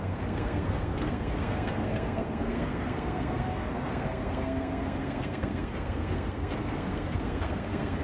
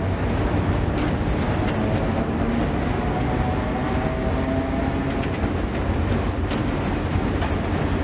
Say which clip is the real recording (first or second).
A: second